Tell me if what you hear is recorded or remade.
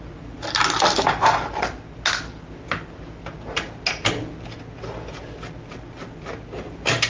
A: recorded